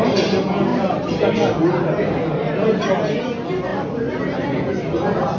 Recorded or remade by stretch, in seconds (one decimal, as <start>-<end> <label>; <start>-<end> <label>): 0.0-0.7 recorded; 0.7-1.2 remade; 1.2-3.7 recorded; 3.7-4.2 remade; 4.2-5.4 recorded